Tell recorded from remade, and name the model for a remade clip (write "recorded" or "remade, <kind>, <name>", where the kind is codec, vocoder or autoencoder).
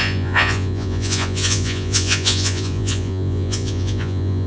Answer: remade, vocoder, Vocos